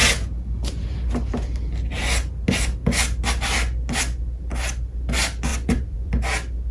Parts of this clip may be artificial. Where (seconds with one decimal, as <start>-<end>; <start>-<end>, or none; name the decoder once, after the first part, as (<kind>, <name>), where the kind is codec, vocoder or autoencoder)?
5.5-6.1 (vocoder, Vocos)